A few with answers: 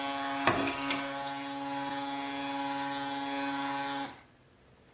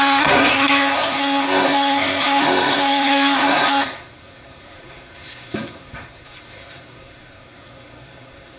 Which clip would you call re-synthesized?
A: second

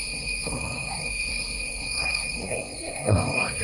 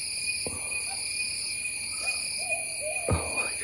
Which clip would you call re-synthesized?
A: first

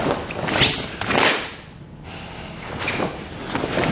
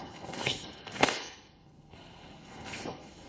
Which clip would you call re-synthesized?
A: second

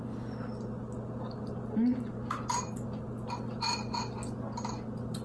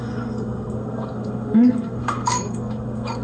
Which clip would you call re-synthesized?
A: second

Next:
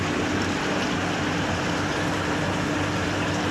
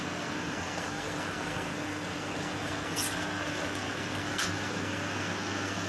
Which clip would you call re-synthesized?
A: second